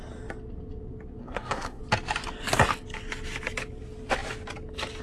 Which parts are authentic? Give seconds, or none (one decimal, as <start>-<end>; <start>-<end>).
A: 0.0-1.2; 1.8-5.0